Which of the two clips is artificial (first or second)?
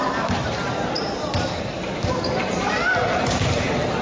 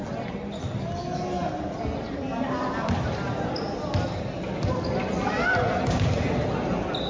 first